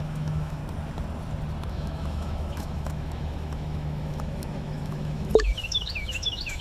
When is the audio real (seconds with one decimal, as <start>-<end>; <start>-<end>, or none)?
0.6-1.7